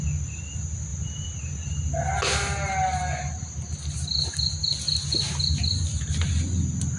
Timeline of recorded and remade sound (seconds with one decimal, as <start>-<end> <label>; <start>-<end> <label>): 0.0-7.0 recorded